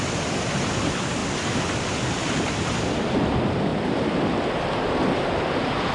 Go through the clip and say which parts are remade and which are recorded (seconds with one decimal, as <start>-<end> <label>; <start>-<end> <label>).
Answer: 0.0-5.9 recorded